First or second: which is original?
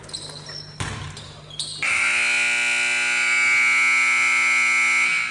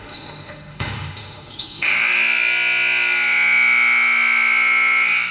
first